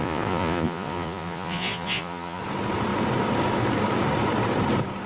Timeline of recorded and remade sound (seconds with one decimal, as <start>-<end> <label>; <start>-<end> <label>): 0.0-2.4 remade; 2.4-5.1 recorded